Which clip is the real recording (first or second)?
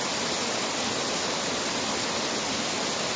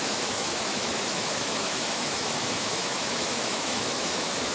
first